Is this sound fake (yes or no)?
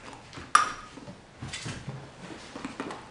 no